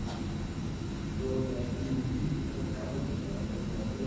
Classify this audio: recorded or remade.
recorded